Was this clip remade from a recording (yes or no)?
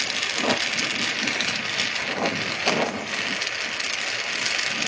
no